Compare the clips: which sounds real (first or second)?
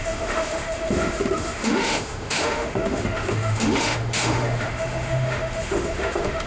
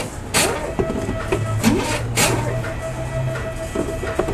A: second